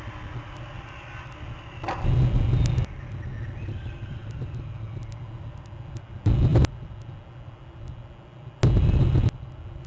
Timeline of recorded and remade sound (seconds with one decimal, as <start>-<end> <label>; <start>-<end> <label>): 0.0-9.9 recorded